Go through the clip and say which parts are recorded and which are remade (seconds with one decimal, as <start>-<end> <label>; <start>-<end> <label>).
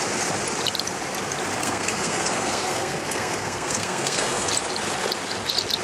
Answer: 0.0-1.6 recorded; 1.6-4.5 remade; 4.5-5.8 recorded